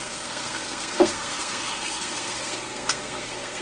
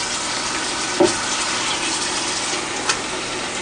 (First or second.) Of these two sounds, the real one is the second